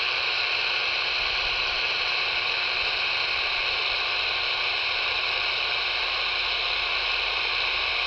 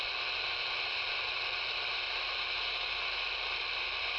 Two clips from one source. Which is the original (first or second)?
second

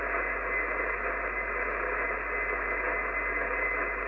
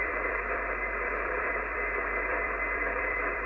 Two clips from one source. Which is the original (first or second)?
first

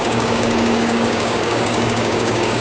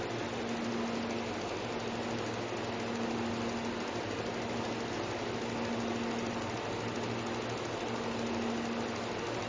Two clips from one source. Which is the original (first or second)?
second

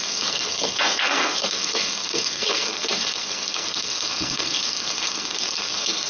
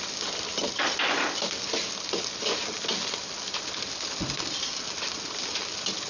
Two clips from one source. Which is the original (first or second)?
second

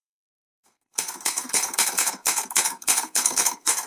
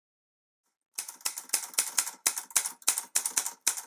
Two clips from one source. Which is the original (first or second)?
second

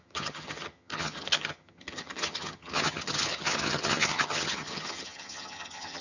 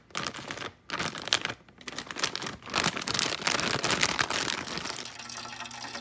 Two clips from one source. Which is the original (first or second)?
second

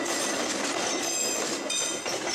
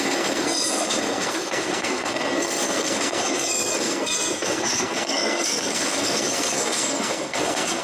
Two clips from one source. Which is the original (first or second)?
first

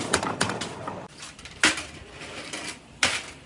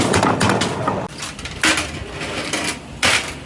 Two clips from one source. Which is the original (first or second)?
second